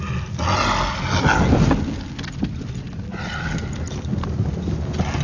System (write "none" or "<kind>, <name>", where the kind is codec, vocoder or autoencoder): none